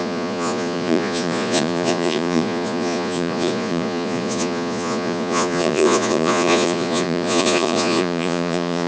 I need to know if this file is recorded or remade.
remade